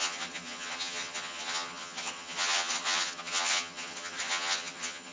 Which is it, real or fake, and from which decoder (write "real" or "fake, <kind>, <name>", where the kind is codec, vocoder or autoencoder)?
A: fake, vocoder, HiFi-GAN